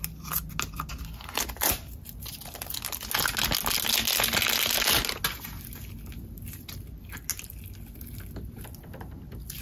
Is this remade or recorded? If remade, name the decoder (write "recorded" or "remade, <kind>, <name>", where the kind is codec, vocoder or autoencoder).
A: recorded